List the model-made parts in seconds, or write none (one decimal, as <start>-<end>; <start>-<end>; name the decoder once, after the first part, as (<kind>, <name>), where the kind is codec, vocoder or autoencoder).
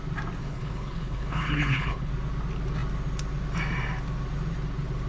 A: 0.4-2.1 (codec, HILCodec)